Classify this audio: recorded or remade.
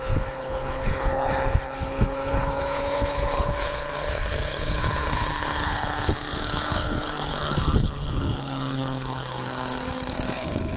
remade